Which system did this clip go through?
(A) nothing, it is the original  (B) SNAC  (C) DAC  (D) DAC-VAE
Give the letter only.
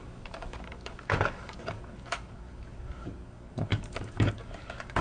C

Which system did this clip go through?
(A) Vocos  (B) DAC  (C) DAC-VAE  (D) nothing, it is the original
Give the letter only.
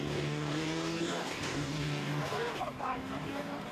B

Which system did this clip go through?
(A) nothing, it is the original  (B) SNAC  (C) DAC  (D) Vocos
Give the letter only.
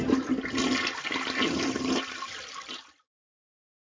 A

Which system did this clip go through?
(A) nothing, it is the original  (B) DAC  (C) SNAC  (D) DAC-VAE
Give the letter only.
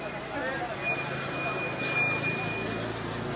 A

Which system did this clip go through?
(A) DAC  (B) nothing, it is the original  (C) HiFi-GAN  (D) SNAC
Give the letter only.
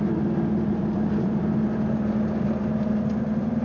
B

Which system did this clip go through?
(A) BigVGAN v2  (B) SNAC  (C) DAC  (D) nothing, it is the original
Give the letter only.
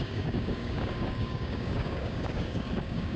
C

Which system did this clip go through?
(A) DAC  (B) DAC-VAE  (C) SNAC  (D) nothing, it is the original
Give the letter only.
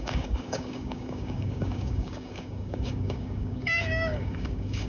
A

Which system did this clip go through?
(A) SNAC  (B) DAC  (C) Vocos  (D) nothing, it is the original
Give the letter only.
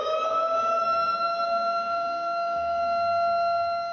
B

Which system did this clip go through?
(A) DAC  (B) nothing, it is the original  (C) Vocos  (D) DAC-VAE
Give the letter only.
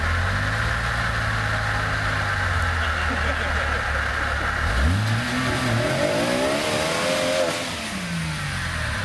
B